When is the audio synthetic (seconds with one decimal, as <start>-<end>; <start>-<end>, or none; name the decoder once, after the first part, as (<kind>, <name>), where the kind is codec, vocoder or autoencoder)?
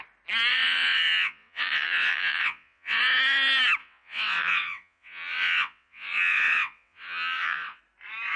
0.5-3.0 (vocoder, WaveNeXt); 3.8-7.8